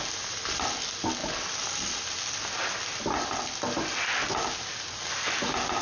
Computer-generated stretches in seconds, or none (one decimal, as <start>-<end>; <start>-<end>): none